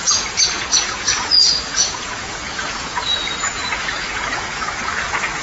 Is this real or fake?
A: fake